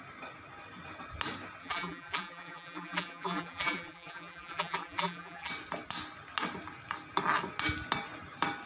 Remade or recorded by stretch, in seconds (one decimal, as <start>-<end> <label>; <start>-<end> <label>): 0.0-1.6 recorded; 1.6-5.5 remade; 5.5-8.7 recorded